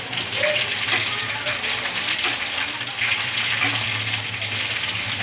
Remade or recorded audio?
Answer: remade